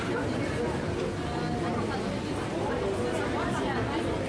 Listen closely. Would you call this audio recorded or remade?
recorded